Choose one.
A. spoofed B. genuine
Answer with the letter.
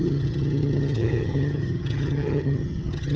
A